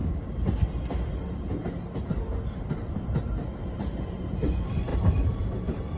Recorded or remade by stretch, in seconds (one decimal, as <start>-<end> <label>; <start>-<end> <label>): 0.0-3.6 recorded; 3.6-6.0 remade